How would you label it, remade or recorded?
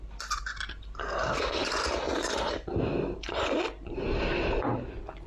recorded